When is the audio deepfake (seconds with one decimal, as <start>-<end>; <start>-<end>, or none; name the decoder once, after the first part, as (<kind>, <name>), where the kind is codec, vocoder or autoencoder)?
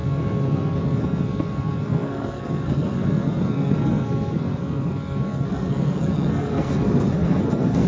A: 0.0-7.9 (codec, SNAC)